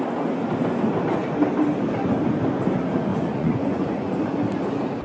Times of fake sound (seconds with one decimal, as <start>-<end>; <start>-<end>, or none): 3.1-4.1

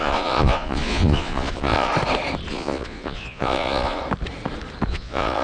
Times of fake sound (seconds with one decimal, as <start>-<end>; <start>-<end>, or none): 0.0-1.9; 2.5-4.0; 4.9-5.4